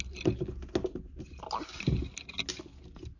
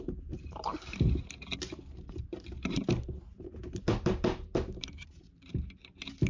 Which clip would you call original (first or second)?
first